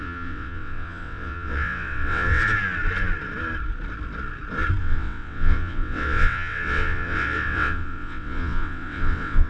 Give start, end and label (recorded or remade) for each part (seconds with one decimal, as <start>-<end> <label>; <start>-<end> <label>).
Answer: 0.0-2.4 remade; 2.4-4.8 recorded; 4.8-9.5 remade